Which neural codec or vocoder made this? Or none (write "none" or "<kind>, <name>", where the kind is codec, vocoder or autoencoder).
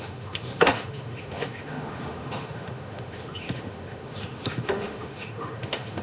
autoencoder, DAC-VAE